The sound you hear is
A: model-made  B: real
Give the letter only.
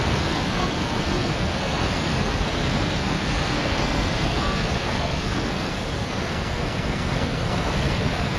A